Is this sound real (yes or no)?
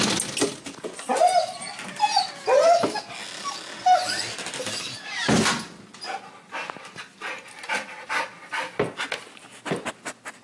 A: yes